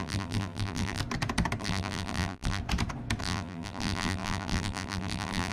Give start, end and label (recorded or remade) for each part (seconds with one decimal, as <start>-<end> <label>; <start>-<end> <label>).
0.0-1.0 remade; 1.0-1.6 recorded; 1.6-2.6 remade; 2.6-3.2 recorded; 3.2-5.5 remade